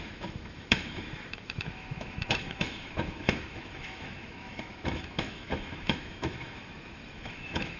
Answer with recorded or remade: remade